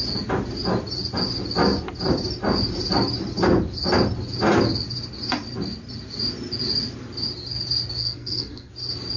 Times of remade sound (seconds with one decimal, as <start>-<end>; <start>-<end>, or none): 8.0-8.7